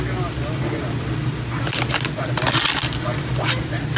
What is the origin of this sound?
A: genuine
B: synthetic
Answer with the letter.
A